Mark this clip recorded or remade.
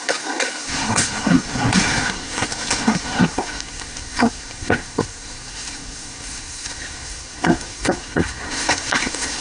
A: remade